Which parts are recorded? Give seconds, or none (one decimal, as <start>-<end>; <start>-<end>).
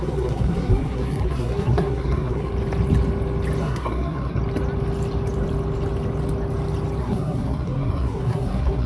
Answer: 2.5-3.6; 4.4-7.0